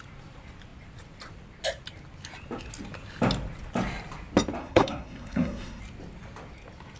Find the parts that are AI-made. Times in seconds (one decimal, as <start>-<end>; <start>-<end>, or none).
4.6-5.8